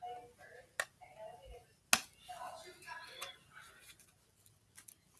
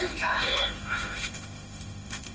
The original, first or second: first